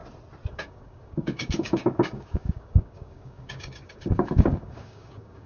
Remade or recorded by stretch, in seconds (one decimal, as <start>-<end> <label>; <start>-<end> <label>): 0.0-0.5 recorded; 0.5-5.5 remade